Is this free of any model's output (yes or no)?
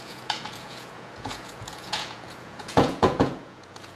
no